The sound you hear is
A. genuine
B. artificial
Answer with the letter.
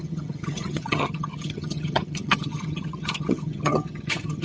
B